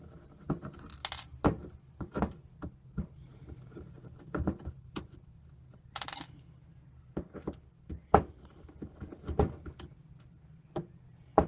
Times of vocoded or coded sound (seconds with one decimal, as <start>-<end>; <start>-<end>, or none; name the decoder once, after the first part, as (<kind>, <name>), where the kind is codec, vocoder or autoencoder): 1.0-1.8 (vocoder, BigVGAN v2); 3.3-5.4